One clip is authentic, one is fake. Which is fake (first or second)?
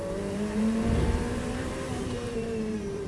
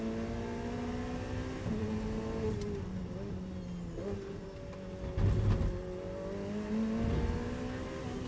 first